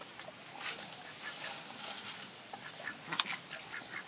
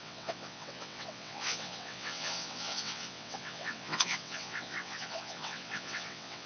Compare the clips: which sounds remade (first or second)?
second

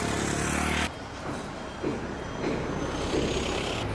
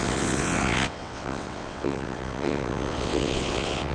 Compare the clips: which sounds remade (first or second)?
second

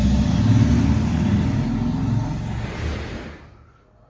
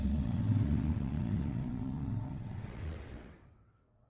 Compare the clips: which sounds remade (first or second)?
second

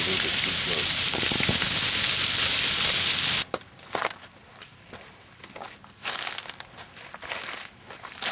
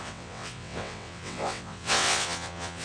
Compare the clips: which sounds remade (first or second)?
second